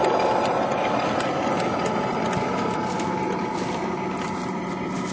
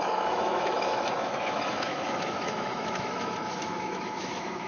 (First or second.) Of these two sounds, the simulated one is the second